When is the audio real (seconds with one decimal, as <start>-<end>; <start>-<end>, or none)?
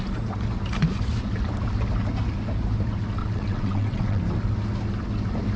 0.0-3.2; 4.2-5.6